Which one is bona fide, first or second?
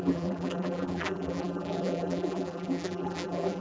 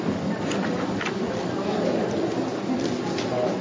second